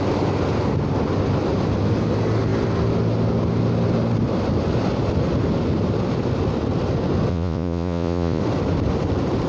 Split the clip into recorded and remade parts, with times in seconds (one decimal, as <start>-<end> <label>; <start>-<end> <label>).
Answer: 0.0-7.3 recorded; 7.3-8.4 remade; 8.4-9.5 recorded